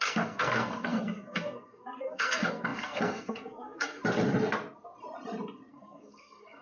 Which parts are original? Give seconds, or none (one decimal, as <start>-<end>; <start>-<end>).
4.0-5.7

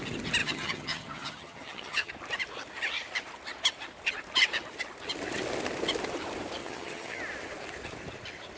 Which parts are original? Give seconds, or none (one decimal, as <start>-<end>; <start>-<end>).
0.0-0.4; 2.1-6.6; 7.2-8.6

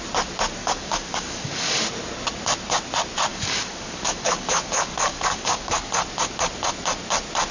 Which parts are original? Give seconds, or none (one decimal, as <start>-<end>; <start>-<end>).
0.0-0.6; 1.8-3.3; 5.9-7.5

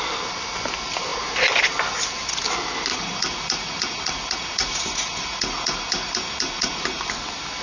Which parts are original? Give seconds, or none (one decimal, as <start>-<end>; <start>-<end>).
0.0-2.9; 7.1-7.6

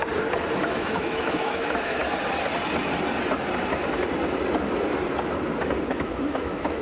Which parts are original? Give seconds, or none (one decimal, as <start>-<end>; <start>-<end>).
0.0-0.6; 2.0-5.9

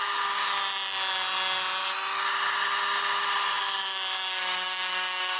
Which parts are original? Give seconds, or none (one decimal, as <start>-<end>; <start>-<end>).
0.4-3.6

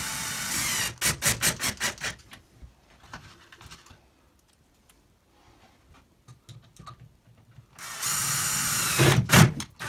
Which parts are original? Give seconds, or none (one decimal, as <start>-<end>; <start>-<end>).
0.0-8.2; 9.2-9.9